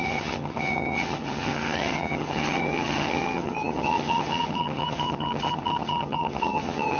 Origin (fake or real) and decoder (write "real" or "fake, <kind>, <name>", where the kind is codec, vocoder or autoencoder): fake, vocoder, HiFi-GAN